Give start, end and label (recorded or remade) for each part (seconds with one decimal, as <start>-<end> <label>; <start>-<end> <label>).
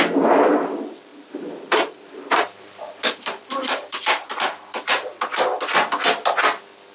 0.0-1.1 recorded; 1.1-5.2 remade; 5.2-6.9 recorded